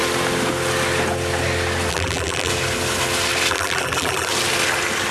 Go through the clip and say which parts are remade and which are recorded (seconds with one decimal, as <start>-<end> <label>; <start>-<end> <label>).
0.0-1.9 recorded; 1.9-2.5 remade; 2.5-3.5 recorded; 3.5-4.3 remade; 4.3-5.1 recorded